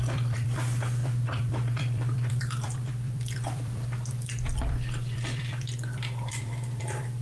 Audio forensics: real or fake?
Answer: fake